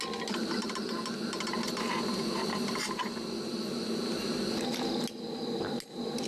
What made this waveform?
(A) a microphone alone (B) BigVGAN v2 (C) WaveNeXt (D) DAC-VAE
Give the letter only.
A